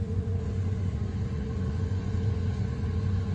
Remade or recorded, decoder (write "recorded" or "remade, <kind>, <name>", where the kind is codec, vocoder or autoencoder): remade, vocoder, Vocos